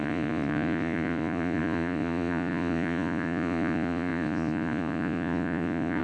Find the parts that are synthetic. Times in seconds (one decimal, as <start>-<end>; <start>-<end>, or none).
0.0-6.0